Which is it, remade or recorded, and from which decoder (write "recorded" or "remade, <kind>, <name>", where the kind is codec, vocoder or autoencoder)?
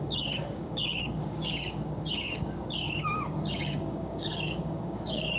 remade, codec, DAC